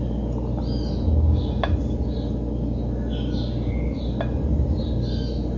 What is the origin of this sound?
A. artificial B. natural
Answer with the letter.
B